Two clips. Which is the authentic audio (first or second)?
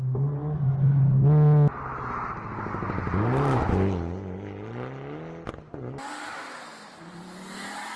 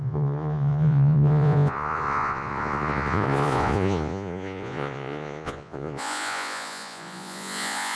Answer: first